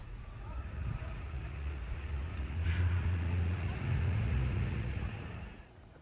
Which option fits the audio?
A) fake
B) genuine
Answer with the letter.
A